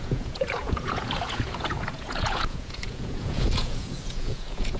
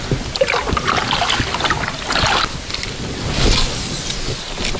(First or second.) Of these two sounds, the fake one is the first